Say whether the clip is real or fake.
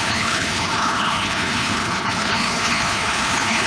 fake